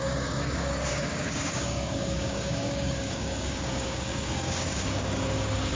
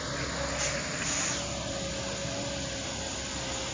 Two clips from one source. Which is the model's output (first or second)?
first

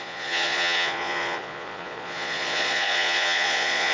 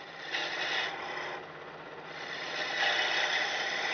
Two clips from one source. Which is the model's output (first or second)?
first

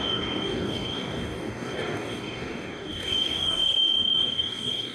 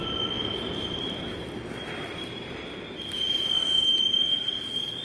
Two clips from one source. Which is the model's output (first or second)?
first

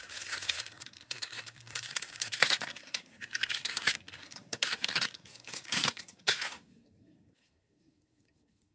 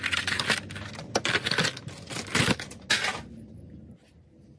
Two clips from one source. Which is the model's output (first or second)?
first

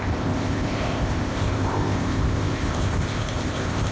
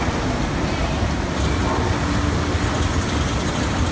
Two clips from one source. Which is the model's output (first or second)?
first